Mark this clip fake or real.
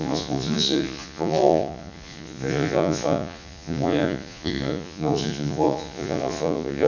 fake